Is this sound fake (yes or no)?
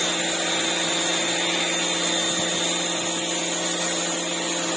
no